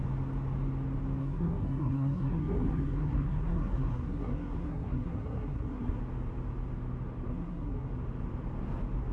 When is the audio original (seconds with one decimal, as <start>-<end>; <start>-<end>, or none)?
0.0-1.2; 6.0-7.3; 7.9-9.1